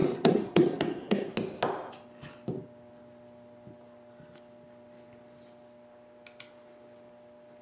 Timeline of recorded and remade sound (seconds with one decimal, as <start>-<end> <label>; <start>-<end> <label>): 0.0-1.3 remade; 1.3-7.6 recorded